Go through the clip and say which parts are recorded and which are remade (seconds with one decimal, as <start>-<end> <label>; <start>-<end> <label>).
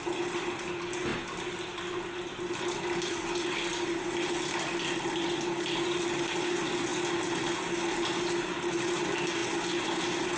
0.0-10.4 recorded